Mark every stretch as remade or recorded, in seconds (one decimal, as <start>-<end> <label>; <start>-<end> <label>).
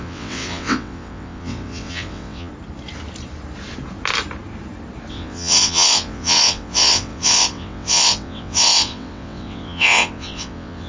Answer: 0.0-2.5 remade; 2.5-5.1 recorded; 5.1-10.9 remade